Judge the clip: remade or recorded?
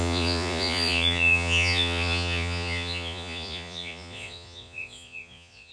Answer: remade